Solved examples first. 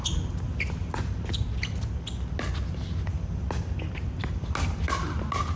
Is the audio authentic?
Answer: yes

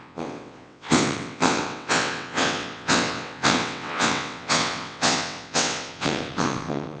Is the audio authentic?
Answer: no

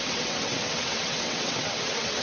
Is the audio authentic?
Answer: no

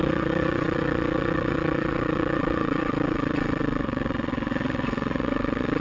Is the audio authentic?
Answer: no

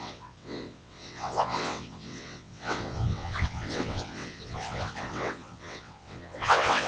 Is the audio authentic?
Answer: no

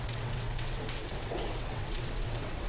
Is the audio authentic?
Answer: no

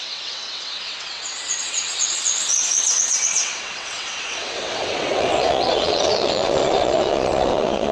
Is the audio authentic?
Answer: no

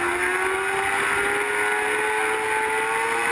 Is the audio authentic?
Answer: yes